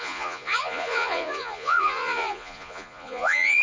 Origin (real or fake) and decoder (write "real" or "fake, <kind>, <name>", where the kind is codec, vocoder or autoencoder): fake, vocoder, Vocos